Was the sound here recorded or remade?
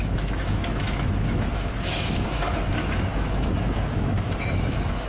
remade